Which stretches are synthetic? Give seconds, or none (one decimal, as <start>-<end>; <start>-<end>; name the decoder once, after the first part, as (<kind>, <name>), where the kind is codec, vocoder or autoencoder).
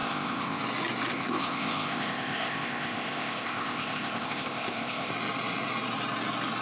0.0-0.6 (codec, ZipCodec); 1.1-5.1